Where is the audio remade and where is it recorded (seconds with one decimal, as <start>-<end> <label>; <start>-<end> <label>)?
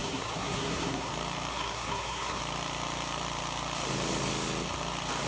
0.0-1.1 remade; 1.1-1.5 recorded; 1.5-2.4 remade; 2.4-5.3 recorded